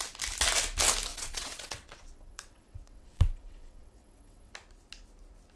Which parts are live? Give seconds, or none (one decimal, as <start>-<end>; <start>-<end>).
0.0-1.1; 4.5-5.6